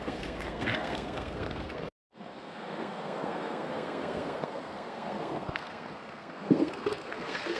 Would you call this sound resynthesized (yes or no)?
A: yes